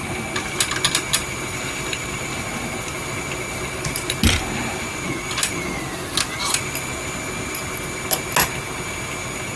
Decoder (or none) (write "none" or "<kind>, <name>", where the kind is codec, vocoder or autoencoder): none